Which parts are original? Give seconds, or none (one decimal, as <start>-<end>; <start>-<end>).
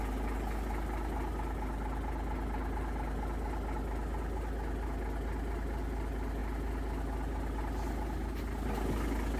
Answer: 0.0-9.4